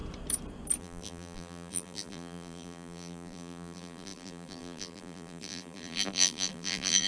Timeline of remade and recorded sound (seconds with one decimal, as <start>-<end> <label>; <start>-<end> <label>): 0.0-0.8 recorded; 0.8-7.1 remade